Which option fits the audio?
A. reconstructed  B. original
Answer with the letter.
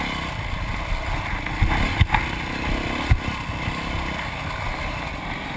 B